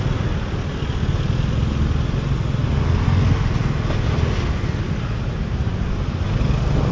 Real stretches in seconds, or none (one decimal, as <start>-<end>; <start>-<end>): 0.0-6.9